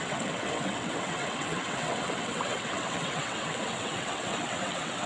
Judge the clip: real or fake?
fake